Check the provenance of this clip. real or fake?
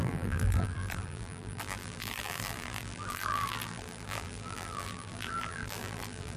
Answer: fake